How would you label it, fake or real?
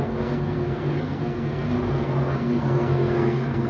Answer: fake